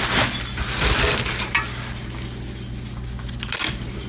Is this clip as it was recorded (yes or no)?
yes